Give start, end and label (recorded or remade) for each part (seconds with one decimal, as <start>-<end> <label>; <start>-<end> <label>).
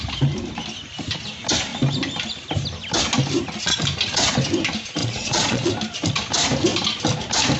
0.0-5.0 recorded; 5.0-5.7 remade; 5.7-7.6 recorded